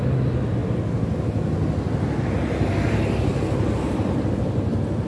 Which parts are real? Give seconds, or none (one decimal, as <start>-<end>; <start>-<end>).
0.0-5.1